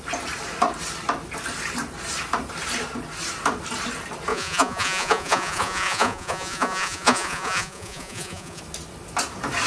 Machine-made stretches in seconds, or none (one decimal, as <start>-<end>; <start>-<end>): 4.3-8.6